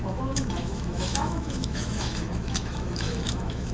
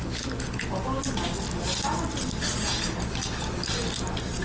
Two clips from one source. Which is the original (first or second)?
second